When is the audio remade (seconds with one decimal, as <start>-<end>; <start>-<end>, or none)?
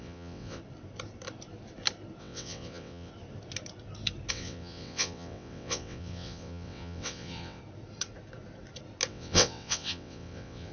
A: 0.0-0.6; 2.2-3.1; 4.3-7.6; 9.1-10.7